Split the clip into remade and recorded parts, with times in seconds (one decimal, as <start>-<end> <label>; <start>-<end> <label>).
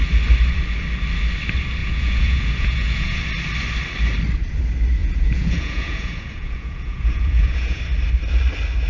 0.0-1.8 recorded; 1.8-3.2 remade; 3.2-5.0 recorded; 5.0-7.8 remade; 7.8-8.9 recorded